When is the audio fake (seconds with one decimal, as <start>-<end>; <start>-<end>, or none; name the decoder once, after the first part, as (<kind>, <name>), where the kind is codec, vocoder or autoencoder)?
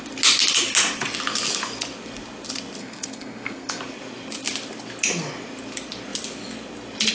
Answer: 2.8-3.8 (codec, SNAC)